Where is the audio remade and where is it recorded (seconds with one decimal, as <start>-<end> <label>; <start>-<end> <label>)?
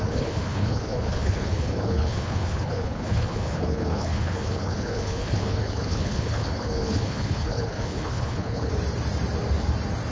0.0-8.7 remade; 8.7-10.1 recorded